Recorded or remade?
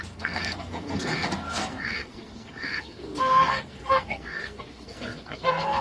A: remade